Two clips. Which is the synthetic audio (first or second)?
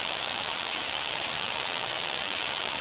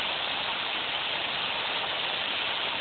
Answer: first